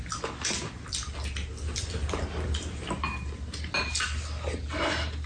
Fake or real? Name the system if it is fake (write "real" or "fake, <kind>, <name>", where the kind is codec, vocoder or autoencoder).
real